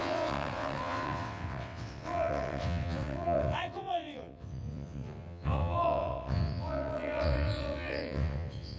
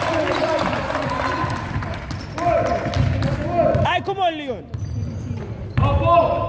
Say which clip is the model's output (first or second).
first